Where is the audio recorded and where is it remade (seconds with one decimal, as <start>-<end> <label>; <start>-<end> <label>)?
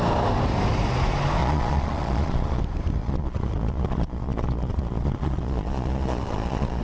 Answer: 0.0-1.4 recorded; 1.4-2.6 remade; 2.6-3.0 recorded; 3.0-6.8 remade